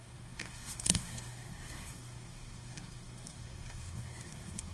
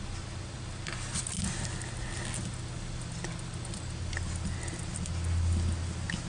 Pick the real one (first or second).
second